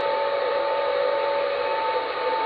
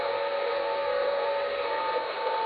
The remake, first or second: second